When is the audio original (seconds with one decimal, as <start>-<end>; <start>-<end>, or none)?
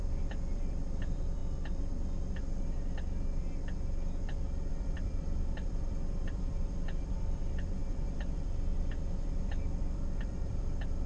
1.4-4.7